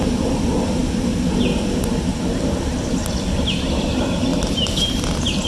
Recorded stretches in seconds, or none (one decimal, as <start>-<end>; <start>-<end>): 0.0-4.3; 5.0-5.5